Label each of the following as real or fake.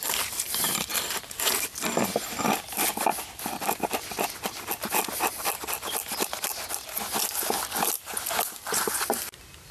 real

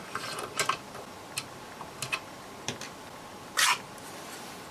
real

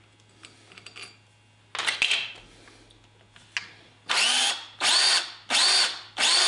real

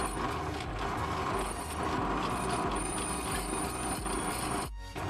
real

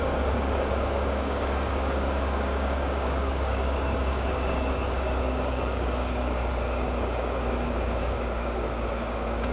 fake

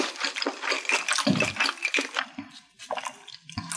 real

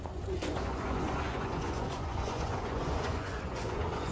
fake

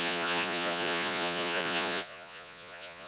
fake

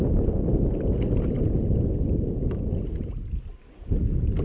real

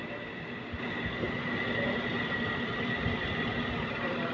real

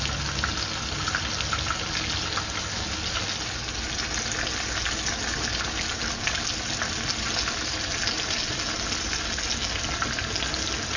real